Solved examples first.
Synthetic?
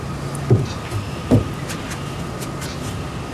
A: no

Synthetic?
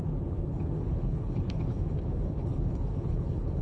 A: yes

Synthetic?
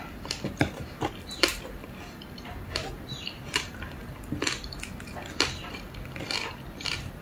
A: yes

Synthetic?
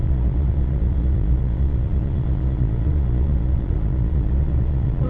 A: yes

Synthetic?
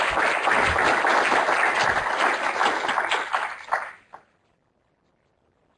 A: no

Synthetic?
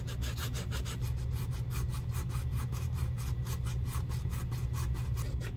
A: no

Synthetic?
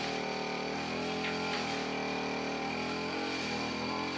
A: no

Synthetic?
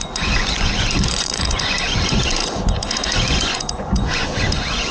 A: yes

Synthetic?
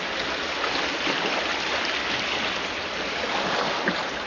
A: no